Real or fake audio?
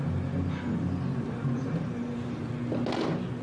real